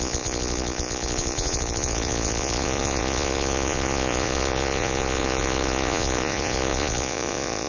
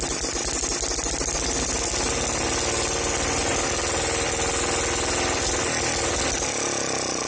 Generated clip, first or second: first